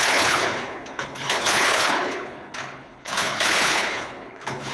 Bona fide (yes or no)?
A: no